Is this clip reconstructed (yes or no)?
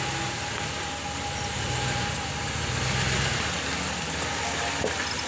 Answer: no